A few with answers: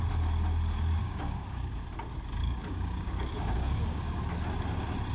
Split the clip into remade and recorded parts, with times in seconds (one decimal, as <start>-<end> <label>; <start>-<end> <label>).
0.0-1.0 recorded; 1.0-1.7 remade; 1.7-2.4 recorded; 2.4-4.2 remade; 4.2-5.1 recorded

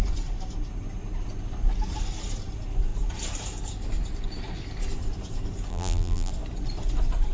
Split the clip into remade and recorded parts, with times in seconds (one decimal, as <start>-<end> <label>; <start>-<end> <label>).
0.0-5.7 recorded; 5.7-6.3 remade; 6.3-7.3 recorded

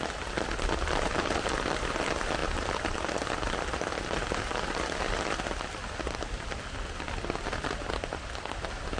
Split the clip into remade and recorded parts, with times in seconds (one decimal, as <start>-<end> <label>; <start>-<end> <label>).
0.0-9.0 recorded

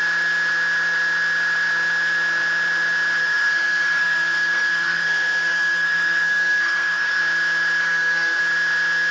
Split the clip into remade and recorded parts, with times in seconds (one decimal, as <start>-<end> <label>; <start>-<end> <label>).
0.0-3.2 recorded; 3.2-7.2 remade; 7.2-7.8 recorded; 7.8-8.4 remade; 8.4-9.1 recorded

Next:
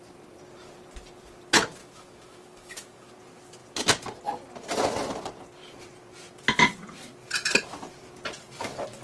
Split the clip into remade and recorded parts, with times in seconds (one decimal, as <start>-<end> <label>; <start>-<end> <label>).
0.0-1.8 recorded; 1.8-3.1 remade; 3.1-9.0 recorded

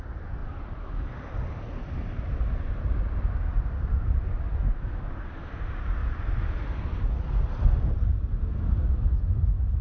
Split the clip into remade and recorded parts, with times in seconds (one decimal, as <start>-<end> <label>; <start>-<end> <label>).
0.0-0.4 recorded; 0.4-0.9 remade; 0.9-6.0 recorded; 6.0-8.0 remade; 8.0-9.8 recorded